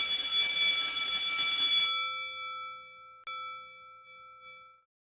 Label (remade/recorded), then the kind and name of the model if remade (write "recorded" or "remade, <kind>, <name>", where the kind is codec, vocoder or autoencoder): recorded